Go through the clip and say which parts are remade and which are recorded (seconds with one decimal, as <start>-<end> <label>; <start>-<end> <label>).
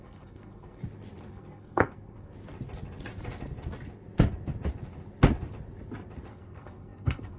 0.0-0.8 remade; 0.8-1.3 recorded; 1.3-2.3 remade; 2.3-6.3 recorded; 6.3-7.4 remade